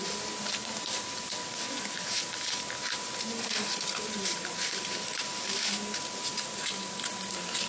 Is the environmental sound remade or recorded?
recorded